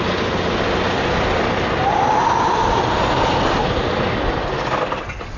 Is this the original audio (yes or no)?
yes